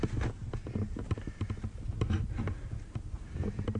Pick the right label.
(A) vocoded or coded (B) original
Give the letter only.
B